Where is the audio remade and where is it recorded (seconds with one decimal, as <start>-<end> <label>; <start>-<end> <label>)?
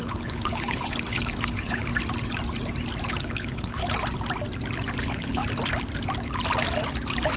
0.0-1.9 remade; 1.9-3.2 recorded; 3.2-3.8 remade; 3.8-5.0 recorded; 5.0-5.4 remade; 5.4-7.4 recorded